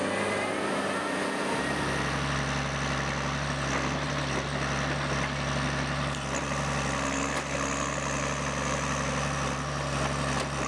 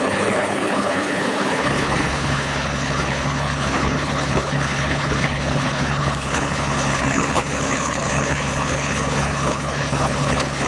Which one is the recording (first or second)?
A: first